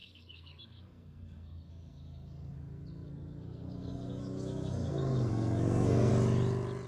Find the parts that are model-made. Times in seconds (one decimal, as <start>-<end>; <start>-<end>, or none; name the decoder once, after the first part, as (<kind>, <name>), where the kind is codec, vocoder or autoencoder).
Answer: 0.0-6.1 (codec, SNAC)